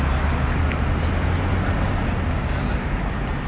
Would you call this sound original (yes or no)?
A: yes